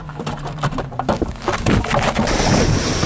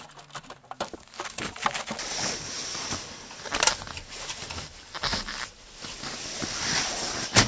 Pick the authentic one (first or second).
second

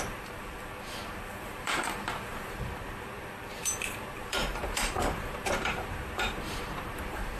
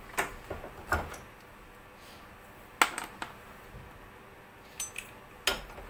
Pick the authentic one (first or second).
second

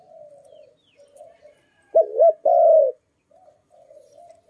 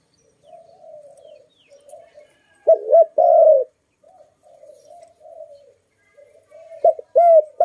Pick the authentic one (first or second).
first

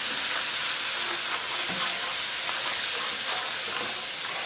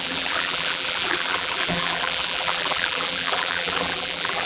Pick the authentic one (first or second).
first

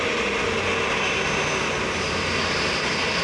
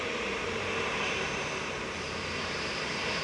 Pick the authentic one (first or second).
first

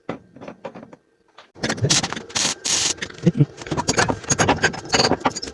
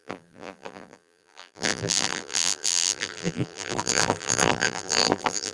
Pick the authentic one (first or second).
first